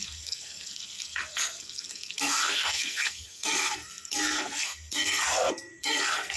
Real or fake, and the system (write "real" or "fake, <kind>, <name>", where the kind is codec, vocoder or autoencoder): fake, codec, SNAC